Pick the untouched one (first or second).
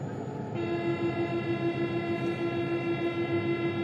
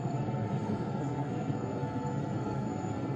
first